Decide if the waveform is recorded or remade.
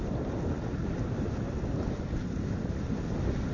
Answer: recorded